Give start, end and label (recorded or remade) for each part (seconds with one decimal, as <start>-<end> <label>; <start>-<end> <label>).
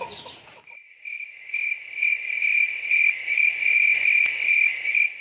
0.0-5.2 recorded